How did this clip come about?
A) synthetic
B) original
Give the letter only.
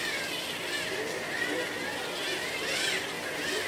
B